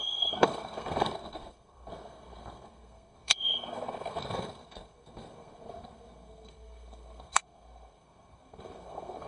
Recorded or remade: remade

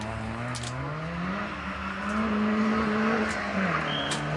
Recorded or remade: recorded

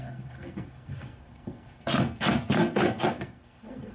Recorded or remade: remade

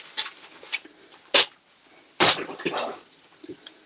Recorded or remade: recorded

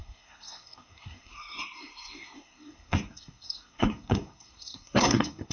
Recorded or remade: remade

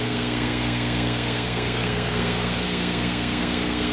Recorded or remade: remade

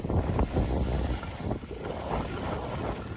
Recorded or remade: recorded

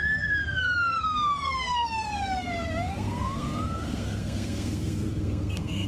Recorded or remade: remade